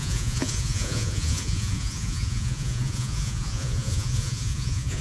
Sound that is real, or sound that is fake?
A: fake